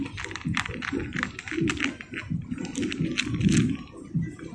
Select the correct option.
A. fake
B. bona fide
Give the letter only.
B